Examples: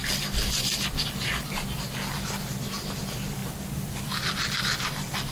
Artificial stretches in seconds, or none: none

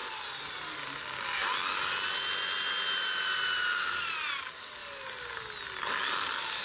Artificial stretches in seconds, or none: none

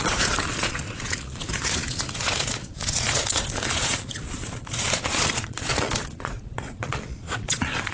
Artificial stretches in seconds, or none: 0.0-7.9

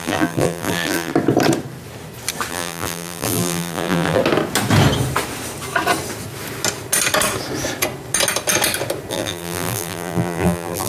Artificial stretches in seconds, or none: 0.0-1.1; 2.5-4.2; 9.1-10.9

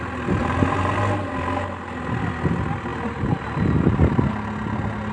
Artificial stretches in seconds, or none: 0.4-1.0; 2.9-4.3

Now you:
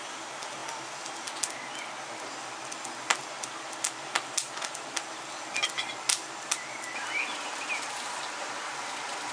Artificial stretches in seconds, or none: none

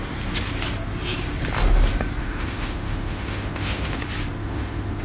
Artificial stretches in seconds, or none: 2.2-4.0; 4.4-5.0

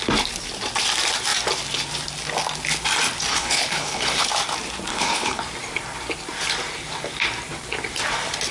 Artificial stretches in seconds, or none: 3.3-4.3; 4.9-5.4